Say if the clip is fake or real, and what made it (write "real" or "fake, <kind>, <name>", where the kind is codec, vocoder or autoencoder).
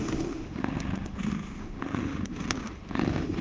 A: fake, autoencoder, DAC-VAE